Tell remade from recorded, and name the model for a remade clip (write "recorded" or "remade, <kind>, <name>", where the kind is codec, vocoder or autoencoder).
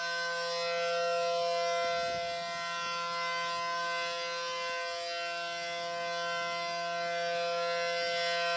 recorded